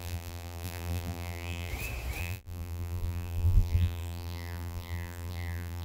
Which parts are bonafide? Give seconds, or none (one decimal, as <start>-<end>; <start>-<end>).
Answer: 1.7-2.2